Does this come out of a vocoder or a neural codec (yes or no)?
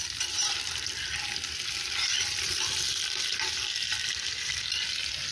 no